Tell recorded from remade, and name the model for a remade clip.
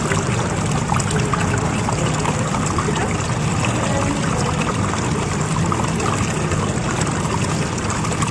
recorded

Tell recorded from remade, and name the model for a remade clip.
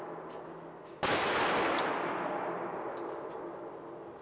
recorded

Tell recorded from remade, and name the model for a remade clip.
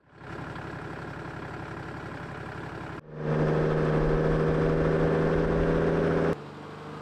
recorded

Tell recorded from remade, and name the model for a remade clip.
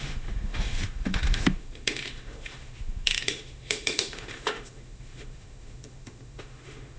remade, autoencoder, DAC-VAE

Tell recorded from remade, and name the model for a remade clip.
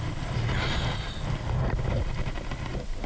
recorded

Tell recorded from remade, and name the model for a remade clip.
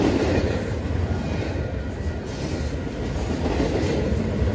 recorded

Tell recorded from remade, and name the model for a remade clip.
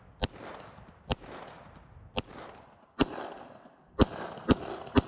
recorded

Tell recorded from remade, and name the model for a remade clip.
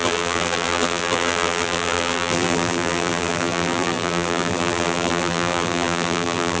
remade, vocoder, BigVGAN v2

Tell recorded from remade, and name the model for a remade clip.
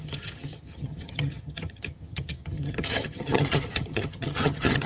remade, vocoder, HiFi-GAN